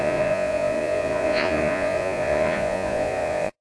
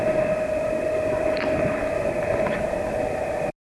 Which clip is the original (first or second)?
second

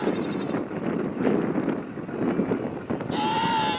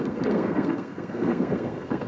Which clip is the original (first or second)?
first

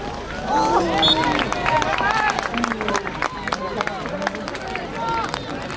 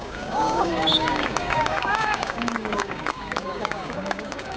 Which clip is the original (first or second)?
first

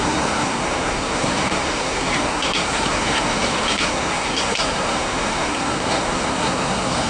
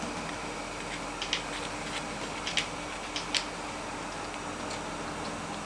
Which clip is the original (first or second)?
second